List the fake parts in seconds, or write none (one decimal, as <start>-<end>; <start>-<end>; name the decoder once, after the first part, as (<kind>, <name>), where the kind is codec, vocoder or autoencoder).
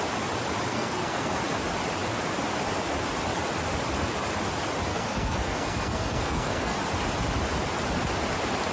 0.7-1.4 (codec, SNAC); 4.9-6.8